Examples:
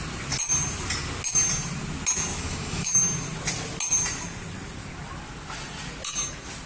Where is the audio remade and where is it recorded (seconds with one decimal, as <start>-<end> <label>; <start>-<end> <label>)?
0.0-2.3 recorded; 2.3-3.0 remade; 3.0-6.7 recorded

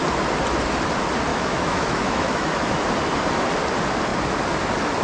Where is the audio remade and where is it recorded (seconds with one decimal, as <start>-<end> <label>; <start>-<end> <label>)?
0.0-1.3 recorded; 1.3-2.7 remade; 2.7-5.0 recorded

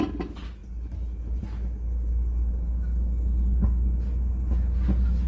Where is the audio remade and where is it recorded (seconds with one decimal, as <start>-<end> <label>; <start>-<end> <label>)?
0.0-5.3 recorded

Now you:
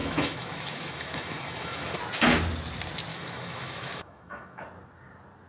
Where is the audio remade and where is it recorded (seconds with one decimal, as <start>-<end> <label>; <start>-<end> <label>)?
0.0-2.0 remade; 2.0-3.1 recorded; 3.1-4.6 remade; 4.6-5.5 recorded

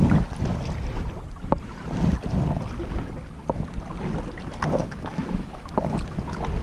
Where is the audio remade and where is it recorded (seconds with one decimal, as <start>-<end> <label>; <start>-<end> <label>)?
0.0-4.8 recorded; 4.8-5.6 remade; 5.6-6.6 recorded

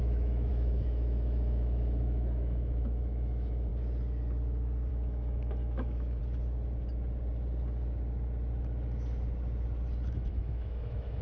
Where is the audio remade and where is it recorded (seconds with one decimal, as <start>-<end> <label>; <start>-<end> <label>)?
0.0-3.7 remade; 3.7-4.9 recorded; 4.9-6.2 remade; 6.2-10.1 recorded; 10.1-11.2 remade